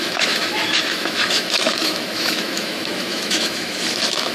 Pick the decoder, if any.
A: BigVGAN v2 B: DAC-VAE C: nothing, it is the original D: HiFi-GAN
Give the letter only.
B